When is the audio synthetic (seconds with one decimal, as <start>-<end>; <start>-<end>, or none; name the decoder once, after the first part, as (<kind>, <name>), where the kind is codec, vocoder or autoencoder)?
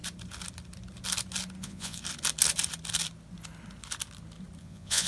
1.6-2.0 (vocoder, Vocos); 4.6-5.1